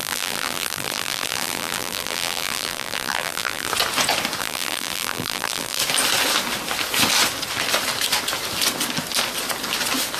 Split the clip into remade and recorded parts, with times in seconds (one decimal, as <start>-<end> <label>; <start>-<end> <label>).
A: 0.0-3.7 remade; 3.7-4.4 recorded; 4.4-5.8 remade; 5.8-10.2 recorded